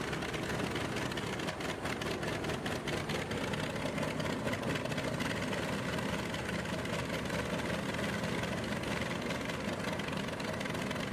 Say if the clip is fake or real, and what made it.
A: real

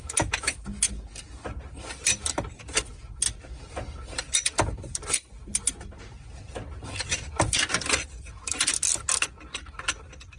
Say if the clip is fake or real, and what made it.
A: real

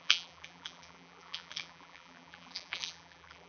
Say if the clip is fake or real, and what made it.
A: fake, vocoder, BigVGAN v2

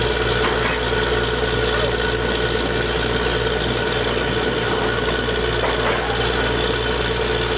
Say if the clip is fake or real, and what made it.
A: real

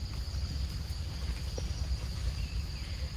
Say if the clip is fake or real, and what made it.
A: real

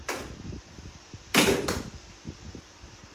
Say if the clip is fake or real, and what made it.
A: fake, vocoder, BigVGAN v2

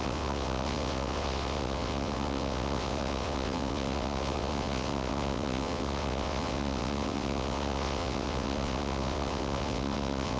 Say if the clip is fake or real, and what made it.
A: fake, vocoder, WaveNeXt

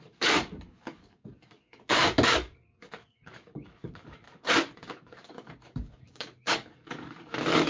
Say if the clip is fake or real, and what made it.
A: fake, codec, DAC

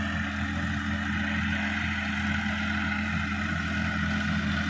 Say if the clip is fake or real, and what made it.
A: real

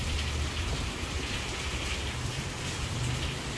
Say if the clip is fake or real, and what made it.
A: real